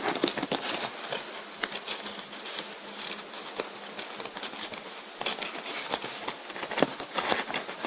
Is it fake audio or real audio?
real